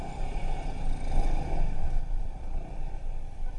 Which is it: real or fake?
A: real